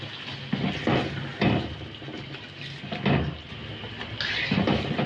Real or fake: real